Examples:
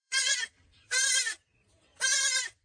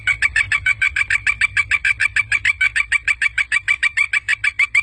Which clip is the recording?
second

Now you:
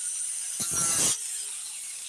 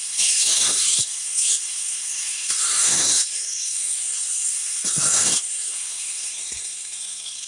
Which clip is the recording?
first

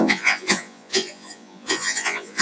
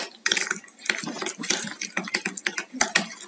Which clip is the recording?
second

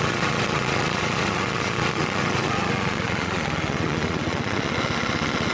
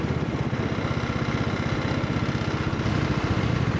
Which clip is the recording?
second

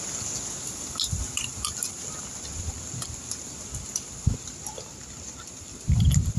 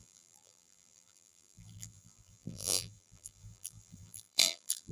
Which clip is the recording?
first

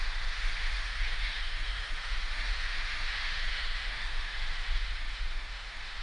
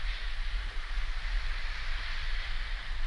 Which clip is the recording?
second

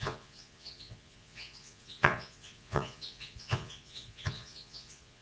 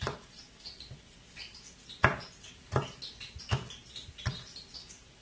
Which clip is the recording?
second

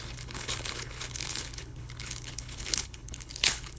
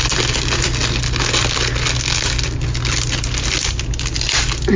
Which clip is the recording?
second